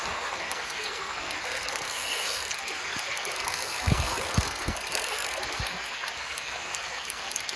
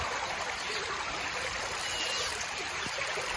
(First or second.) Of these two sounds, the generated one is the first